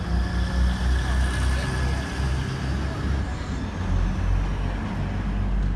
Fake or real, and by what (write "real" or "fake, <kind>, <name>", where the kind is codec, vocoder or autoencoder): real